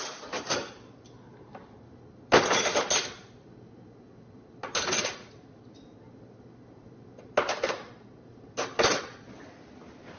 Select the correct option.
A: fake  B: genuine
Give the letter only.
B